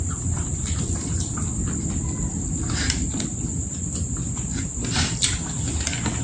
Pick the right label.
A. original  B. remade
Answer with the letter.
A